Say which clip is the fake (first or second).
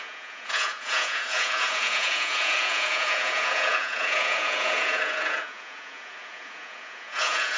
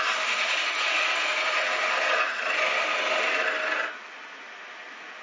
first